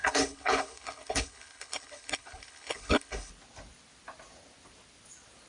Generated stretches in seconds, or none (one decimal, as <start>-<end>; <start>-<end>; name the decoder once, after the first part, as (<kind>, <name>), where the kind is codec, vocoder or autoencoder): 0.0-3.3 (codec, HILCodec)